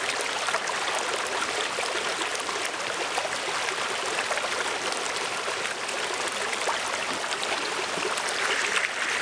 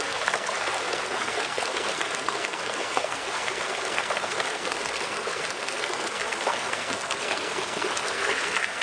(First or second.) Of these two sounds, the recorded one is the first